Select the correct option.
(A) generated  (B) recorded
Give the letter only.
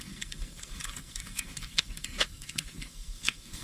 A